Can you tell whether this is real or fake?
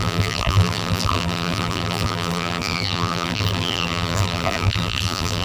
fake